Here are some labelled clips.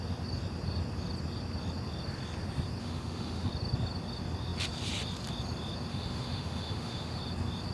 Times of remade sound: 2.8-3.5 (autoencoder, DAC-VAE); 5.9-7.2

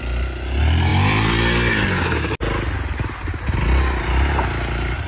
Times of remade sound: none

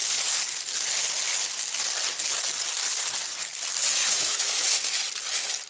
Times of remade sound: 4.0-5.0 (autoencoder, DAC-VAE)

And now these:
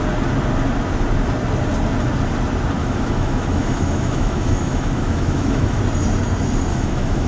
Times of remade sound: 2.8-5.8 (autoencoder, DAC-VAE); 6.7-7.3

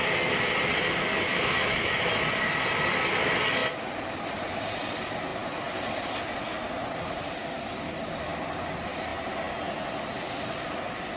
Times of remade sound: 1.3-2.1 (autoencoder, DAC-VAE)

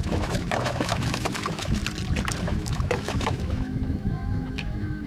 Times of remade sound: 0.0-1.8 (autoencoder, DAC-VAE); 2.4-5.1

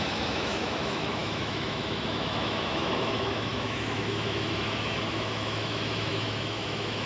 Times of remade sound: 0.0-7.1 (autoencoder, DAC-VAE)